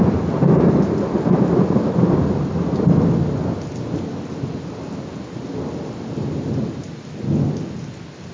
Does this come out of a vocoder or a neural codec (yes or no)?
no